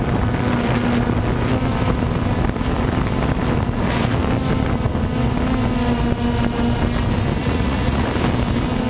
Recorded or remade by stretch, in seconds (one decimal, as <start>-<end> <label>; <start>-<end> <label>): 0.0-7.4 recorded; 7.4-8.1 remade; 8.1-8.9 recorded